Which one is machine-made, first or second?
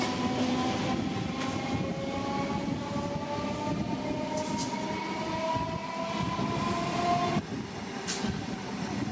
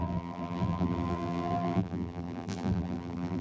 second